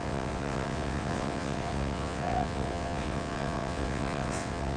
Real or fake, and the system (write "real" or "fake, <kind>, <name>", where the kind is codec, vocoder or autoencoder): fake, vocoder, WaveNeXt